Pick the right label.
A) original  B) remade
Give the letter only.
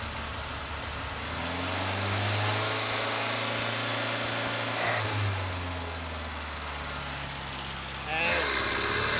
A